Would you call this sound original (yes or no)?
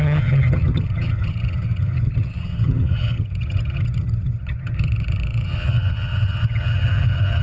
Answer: no